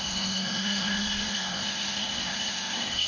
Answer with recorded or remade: remade